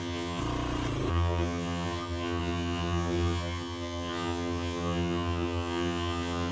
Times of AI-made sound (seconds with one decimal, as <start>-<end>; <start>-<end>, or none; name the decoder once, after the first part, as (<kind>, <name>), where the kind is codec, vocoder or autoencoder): 0.0-0.4 (vocoder, HiFi-GAN); 1.1-6.5